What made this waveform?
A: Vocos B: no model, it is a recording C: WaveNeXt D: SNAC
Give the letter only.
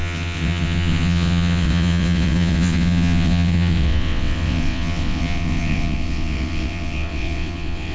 C